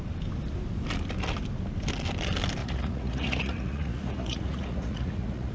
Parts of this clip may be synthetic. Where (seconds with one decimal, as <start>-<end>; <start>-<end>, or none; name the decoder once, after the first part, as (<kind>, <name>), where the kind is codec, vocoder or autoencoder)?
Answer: 2.6-5.5 (vocoder, Vocos)